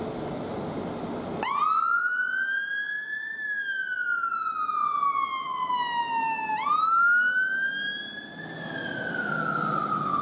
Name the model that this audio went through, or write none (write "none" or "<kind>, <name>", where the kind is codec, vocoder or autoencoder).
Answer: none